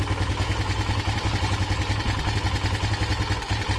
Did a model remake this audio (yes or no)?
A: no